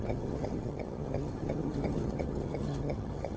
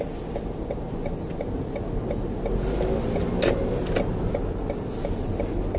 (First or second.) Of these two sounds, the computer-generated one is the first